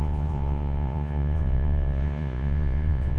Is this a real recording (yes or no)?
no